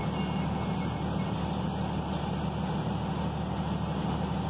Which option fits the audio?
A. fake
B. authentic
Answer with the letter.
B